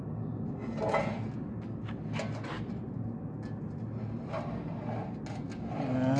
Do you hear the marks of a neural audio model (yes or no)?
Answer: no